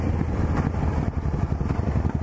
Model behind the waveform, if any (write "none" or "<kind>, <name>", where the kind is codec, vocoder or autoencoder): none